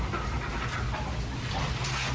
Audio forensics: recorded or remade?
recorded